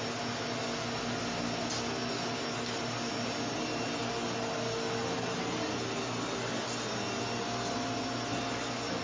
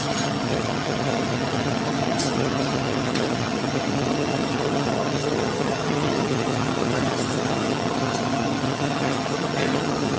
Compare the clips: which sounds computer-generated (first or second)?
second